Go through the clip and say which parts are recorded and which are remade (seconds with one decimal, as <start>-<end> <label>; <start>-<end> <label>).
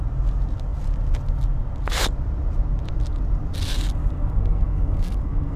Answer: 0.0-4.2 recorded; 4.2-5.6 remade